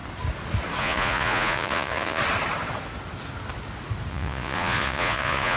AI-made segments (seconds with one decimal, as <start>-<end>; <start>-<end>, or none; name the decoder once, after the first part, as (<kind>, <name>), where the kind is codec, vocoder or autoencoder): 0.8-2.2 (vocoder, Vocos); 4.1-5.6